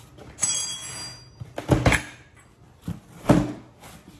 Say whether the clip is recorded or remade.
recorded